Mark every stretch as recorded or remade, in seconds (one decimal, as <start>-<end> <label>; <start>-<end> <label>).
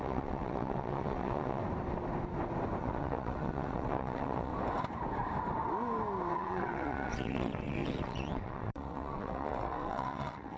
0.0-1.6 remade; 1.6-2.8 recorded; 2.8-4.5 remade; 4.5-6.3 recorded; 6.3-10.6 remade